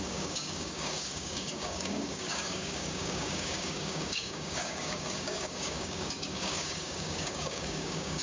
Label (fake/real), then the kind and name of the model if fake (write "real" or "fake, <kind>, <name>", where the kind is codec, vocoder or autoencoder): fake, codec, DAC